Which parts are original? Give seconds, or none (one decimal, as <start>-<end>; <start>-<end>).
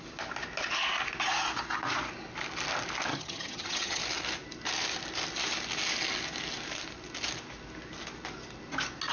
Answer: 0.0-3.1; 4.0-9.1